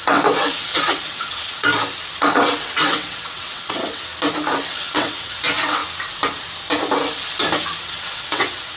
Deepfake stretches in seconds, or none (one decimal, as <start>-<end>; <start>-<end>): 0.0-1.7; 2.2-4.1; 4.7-5.8; 7.8-8.8